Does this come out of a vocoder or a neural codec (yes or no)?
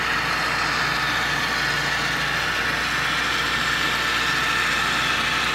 no